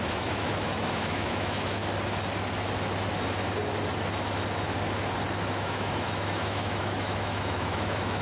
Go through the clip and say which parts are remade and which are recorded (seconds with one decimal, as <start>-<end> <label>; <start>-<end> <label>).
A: 0.0-1.8 remade; 1.8-5.5 recorded; 5.5-8.2 remade